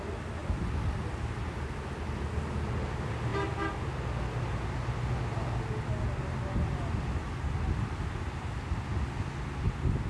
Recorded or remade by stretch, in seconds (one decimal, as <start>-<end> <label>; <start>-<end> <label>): 0.0-10.1 recorded